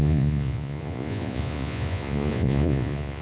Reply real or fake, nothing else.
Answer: fake